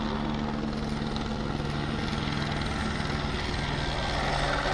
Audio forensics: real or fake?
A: real